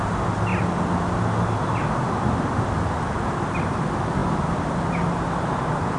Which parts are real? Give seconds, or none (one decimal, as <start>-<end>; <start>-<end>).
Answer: 0.0-6.0